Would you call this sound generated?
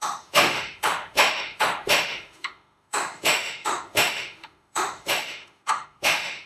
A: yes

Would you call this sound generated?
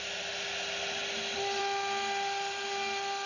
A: no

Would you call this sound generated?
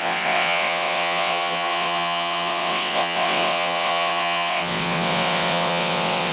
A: yes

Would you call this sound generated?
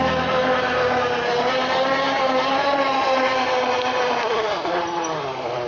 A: no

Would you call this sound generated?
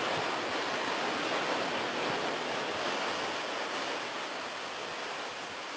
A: no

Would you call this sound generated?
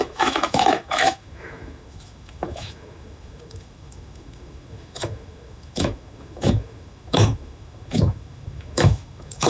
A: yes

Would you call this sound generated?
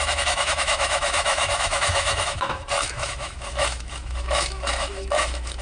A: yes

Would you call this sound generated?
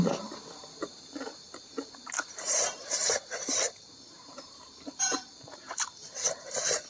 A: yes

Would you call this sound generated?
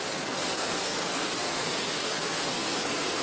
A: yes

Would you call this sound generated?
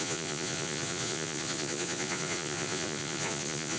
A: yes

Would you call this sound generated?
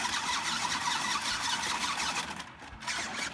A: no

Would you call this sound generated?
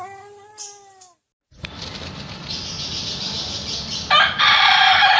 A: no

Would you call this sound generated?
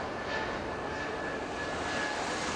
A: no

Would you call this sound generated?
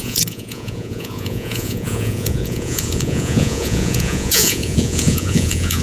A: yes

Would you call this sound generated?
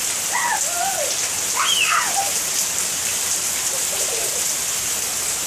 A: no